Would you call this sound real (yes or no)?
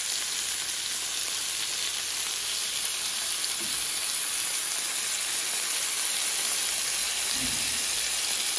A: yes